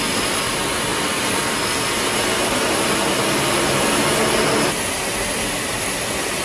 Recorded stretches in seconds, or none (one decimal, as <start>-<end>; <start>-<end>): 0.0-6.4